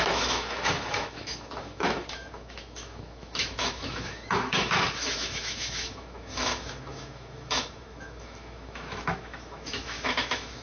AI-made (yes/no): yes